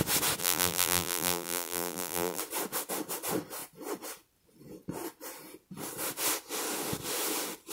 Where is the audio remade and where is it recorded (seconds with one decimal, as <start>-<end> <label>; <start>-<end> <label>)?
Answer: 0.0-0.4 recorded; 0.4-2.4 remade; 2.4-7.7 recorded